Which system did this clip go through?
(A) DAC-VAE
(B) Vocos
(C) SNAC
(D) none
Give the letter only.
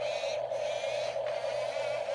D